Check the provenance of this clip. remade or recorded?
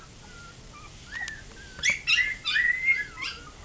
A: recorded